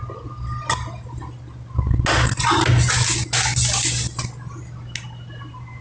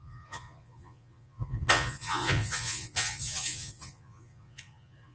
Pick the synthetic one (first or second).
second